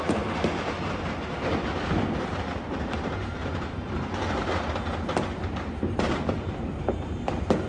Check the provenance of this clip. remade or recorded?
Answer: remade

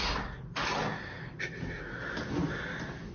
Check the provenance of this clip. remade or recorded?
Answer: recorded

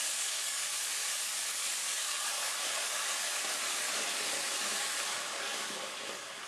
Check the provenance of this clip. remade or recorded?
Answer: remade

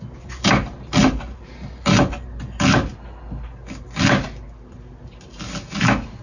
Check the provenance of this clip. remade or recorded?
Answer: recorded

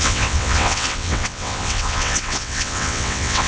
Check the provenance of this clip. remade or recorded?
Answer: remade